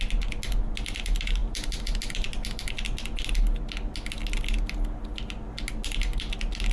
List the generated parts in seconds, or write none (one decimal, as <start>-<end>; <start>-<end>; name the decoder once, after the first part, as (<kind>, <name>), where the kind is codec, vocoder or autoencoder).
none